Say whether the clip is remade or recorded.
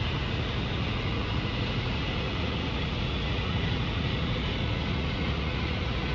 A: remade